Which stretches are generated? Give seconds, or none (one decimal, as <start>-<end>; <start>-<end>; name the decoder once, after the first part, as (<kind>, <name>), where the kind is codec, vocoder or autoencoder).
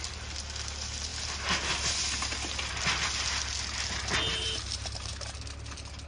4.3-5.4 (vocoder, BigVGAN v2)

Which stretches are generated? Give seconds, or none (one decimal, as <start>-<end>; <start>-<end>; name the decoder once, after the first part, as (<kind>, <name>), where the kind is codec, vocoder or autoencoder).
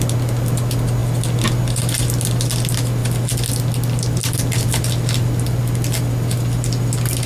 none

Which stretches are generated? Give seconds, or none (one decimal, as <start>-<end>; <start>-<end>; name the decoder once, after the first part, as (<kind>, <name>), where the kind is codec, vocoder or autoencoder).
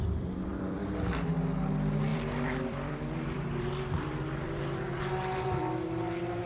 0.5-1.3 (vocoder, BigVGAN v2); 2.1-5.0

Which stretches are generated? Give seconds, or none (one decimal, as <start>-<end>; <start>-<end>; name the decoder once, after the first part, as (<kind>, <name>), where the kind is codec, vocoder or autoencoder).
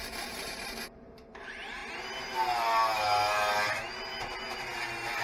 0.0-1.8 (vocoder, BigVGAN v2)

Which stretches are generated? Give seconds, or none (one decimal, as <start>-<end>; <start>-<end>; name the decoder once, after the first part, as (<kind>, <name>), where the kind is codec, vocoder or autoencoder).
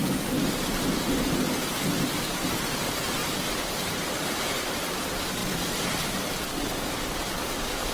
3.2-4.7 (vocoder, BigVGAN v2); 5.4-6.1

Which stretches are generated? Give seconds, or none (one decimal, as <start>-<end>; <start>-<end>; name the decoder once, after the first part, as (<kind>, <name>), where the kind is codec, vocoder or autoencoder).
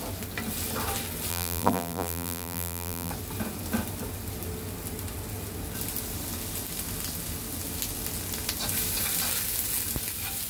1.3-3.1 (vocoder, BigVGAN v2)